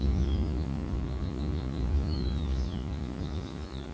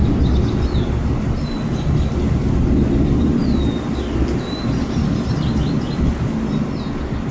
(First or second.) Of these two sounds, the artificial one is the first